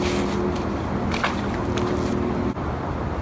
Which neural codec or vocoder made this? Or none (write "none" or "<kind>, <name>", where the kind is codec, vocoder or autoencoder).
none